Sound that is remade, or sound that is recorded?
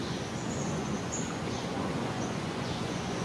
remade